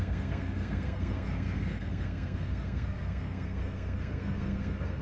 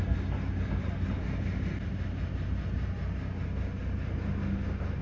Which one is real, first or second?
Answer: second